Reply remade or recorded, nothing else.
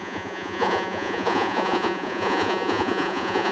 remade